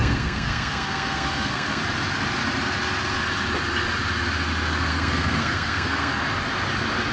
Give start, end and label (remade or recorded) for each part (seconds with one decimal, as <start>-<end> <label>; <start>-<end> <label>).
0.0-1.8 remade; 1.8-4.9 recorded; 4.9-6.1 remade; 6.1-7.1 recorded